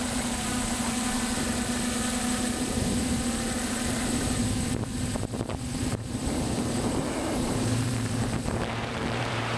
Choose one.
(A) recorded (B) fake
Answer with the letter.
B